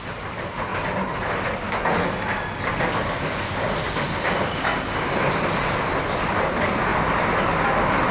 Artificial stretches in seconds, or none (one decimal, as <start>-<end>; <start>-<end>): none